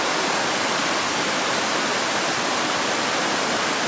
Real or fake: real